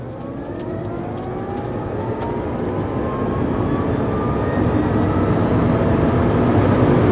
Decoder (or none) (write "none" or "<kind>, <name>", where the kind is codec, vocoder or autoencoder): none